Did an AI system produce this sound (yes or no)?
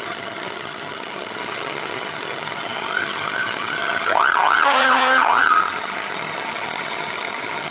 yes